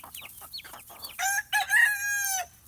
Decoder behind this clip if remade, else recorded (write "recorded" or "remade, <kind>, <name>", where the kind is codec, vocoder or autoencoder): recorded